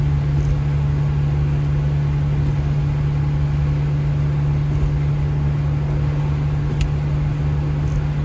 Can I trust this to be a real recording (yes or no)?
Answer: yes